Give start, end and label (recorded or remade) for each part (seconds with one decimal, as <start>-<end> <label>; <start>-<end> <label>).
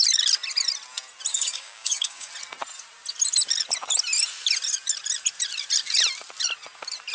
0.0-1.3 recorded; 1.3-2.3 remade; 2.3-7.1 recorded